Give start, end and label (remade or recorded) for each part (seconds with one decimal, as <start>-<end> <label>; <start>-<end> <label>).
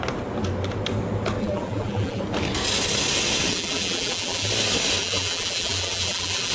0.0-1.4 recorded; 1.4-2.2 remade; 2.2-3.5 recorded; 3.5-4.5 remade; 4.5-5.0 recorded; 5.0-6.5 remade